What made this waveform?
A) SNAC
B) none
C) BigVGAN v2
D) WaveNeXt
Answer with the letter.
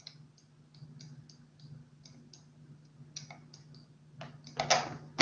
B